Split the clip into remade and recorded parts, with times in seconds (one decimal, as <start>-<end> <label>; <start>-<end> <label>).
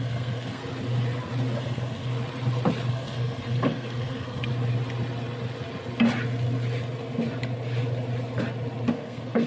0.0-0.6 remade; 0.6-1.6 recorded; 1.6-2.1 remade; 2.1-2.9 recorded; 2.9-4.5 remade; 4.5-8.9 recorded; 8.9-9.5 remade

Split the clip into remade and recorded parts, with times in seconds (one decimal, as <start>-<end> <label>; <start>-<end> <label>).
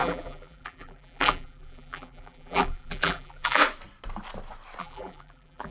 0.0-3.6 remade; 3.6-4.8 recorded; 4.8-5.7 remade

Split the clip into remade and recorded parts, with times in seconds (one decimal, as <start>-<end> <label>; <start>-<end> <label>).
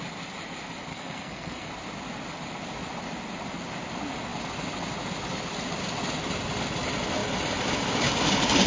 0.0-0.9 recorded; 0.9-1.7 remade; 1.7-8.7 recorded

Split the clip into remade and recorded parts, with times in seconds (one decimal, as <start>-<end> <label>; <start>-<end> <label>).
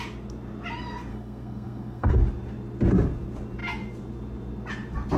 0.0-1.1 recorded; 1.1-2.1 remade; 2.1-5.2 recorded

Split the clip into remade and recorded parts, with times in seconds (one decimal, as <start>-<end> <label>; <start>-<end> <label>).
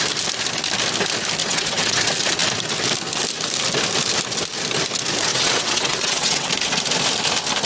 0.0-1.4 recorded; 1.4-2.0 remade; 2.0-5.3 recorded; 5.3-6.5 remade; 6.5-7.7 recorded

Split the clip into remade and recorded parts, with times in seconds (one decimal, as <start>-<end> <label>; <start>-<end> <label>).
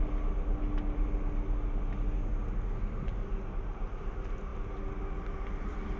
0.0-6.0 recorded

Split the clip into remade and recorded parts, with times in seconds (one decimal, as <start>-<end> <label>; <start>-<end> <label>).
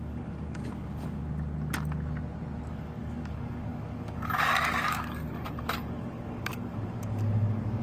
0.0-1.2 remade; 1.2-2.7 recorded; 2.7-7.8 remade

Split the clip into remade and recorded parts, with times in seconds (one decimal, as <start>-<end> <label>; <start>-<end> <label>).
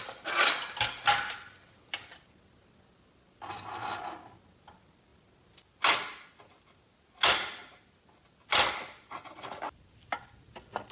0.0-10.9 recorded